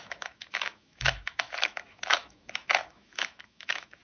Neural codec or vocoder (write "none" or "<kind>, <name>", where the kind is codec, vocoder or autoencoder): autoencoder, DAC-VAE